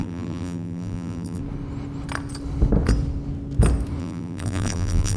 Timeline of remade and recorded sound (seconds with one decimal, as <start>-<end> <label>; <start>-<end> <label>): 0.0-1.4 remade; 1.4-4.0 recorded; 4.0-5.2 remade